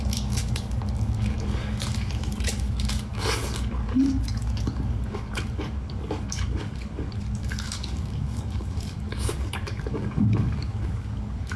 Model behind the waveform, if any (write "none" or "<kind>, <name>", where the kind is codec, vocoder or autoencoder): codec, DAC